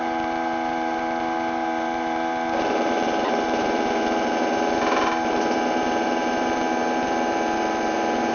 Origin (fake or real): fake